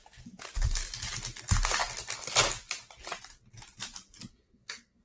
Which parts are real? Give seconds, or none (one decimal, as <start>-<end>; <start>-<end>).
0.0-4.3